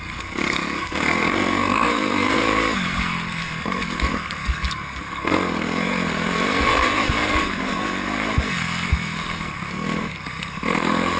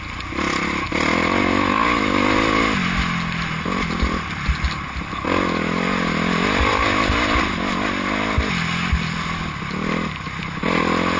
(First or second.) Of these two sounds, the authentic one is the second